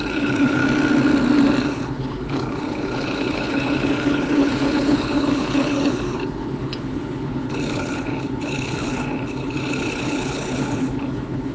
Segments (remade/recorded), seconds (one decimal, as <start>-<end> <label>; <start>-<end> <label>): 0.0-0.6 remade; 0.6-1.6 recorded; 1.6-11.5 remade